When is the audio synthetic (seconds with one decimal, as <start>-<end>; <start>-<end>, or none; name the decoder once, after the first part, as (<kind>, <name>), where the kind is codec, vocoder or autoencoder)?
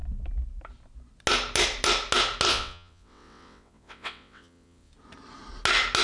2.5-4.9 (vocoder, WaveNeXt)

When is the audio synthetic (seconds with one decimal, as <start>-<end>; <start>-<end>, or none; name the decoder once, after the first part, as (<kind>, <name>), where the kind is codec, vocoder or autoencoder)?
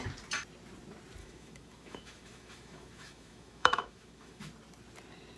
1.2-4.4 (autoencoder, DAC-VAE)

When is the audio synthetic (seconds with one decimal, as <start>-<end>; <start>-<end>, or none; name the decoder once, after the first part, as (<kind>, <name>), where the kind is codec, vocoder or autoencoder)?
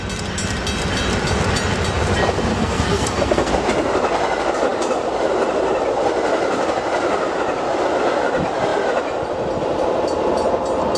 2.5-3.5 (codec, SNAC)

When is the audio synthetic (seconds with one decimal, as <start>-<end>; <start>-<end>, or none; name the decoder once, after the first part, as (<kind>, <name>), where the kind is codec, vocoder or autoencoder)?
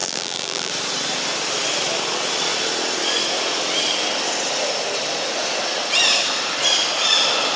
0.0-0.7 (vocoder, BigVGAN v2)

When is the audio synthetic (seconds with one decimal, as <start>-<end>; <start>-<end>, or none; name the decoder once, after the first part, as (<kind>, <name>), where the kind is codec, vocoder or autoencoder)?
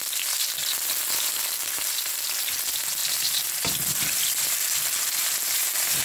none